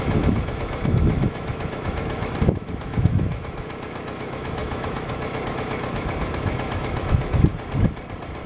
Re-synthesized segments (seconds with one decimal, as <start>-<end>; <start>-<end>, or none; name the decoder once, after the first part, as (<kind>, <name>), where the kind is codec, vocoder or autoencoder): 0.0-7.5 (autoencoder, DAC-VAE)